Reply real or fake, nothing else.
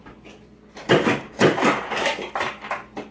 real